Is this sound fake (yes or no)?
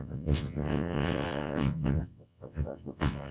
yes